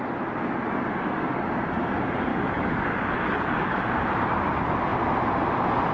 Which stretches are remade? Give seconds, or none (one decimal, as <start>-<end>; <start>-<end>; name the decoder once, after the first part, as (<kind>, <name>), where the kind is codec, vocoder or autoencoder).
2.3-3.8 (codec, DAC)